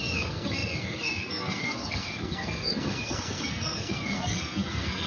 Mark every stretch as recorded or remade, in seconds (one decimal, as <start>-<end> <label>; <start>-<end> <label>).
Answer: 0.0-5.1 remade